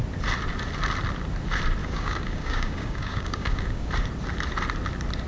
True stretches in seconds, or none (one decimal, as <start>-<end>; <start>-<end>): 0.0-1.8; 3.9-5.3